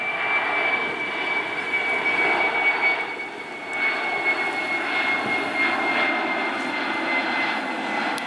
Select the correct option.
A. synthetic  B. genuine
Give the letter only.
B